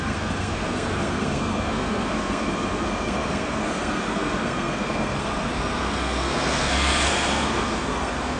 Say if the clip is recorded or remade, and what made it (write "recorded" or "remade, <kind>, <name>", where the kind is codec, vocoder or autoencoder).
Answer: remade, codec, SNAC